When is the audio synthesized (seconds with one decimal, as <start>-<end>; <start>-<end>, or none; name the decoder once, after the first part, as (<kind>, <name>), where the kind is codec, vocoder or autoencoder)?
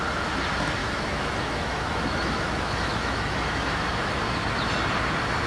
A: 0.8-4.1 (autoencoder, DAC-VAE)